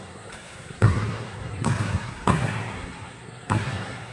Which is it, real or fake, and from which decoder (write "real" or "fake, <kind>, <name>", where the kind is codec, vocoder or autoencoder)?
fake, codec, SNAC